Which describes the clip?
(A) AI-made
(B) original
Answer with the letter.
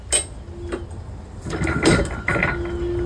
B